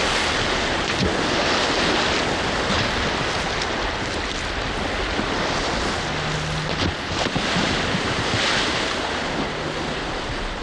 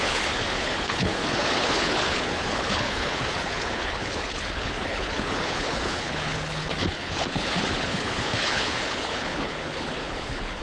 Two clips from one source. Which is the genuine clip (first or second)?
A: first